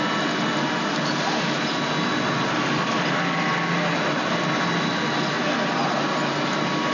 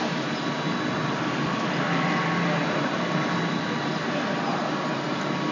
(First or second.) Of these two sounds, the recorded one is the first